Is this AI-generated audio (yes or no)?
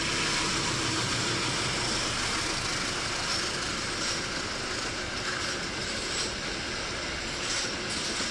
no